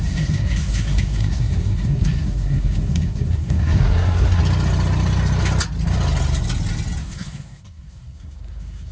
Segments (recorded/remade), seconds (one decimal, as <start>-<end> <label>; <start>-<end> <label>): 0.0-4.4 remade; 4.4-7.0 recorded; 7.0-8.9 remade

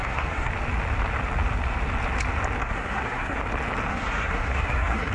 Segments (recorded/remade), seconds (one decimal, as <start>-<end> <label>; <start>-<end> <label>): 0.0-0.5 remade; 0.5-2.6 recorded; 2.6-3.4 remade; 3.4-3.9 recorded; 3.9-5.1 remade

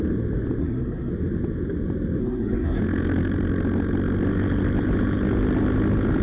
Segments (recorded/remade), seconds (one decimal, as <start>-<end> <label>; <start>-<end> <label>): 0.0-0.6 recorded; 0.6-1.1 remade; 1.1-2.2 recorded; 2.2-2.8 remade; 2.8-6.2 recorded

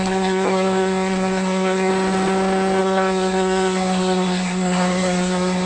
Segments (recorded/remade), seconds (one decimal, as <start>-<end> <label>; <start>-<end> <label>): 0.0-1.9 remade; 1.9-2.8 recorded; 2.8-5.7 remade